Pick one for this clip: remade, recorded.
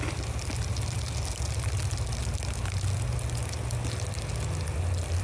recorded